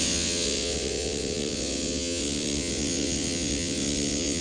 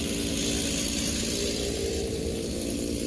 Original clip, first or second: second